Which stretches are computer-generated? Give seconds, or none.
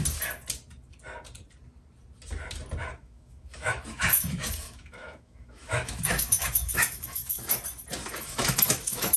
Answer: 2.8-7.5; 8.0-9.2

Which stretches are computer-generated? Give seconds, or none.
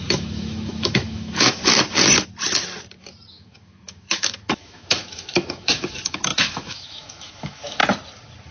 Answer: 0.0-1.6; 3.3-7.8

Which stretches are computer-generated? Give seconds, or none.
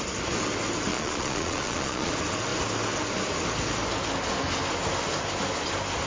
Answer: 0.9-2.1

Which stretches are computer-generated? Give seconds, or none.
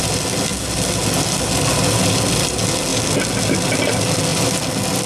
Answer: none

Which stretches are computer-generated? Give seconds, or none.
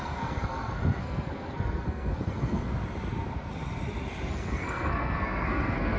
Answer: 0.0-2.7; 4.3-6.0